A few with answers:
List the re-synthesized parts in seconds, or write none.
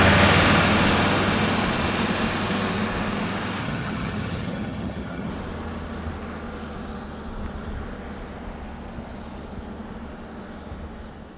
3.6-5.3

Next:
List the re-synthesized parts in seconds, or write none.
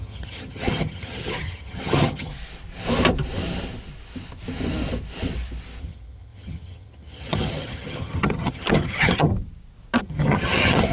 0.0-2.3; 5.8-9.3; 10.0-10.9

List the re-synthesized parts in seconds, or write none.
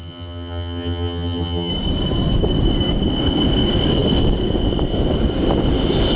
0.0-1.7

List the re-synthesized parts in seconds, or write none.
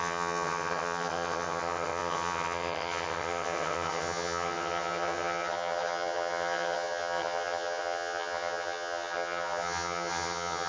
0.0-10.7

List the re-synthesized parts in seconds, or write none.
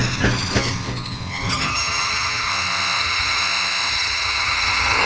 1.5-2.5; 3.0-3.4; 3.9-5.1